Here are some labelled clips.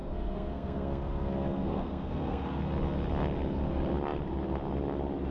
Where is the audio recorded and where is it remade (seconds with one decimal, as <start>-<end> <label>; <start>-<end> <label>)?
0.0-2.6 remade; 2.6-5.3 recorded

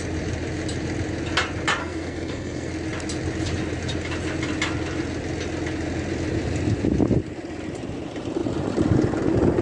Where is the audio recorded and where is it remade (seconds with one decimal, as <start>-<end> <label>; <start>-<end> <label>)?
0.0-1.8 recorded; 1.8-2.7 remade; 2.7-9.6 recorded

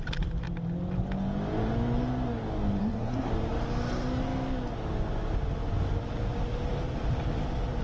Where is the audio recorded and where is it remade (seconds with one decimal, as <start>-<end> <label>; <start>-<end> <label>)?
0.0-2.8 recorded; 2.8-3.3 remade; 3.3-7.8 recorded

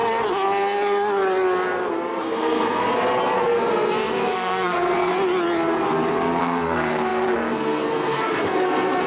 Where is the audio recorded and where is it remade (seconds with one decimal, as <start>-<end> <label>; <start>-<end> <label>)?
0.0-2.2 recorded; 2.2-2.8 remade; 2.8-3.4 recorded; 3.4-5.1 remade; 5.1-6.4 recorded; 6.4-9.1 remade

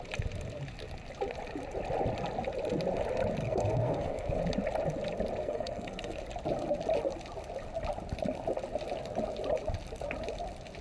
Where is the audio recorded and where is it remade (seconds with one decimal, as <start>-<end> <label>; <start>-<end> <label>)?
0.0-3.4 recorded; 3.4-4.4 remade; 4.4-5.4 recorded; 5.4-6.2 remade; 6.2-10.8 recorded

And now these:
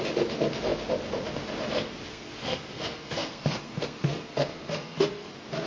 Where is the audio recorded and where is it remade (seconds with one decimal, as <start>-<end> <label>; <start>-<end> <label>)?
0.0-2.1 recorded; 2.1-5.3 remade; 5.3-5.7 recorded